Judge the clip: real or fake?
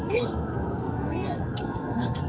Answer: fake